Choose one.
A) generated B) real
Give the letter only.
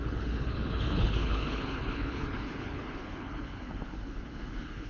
A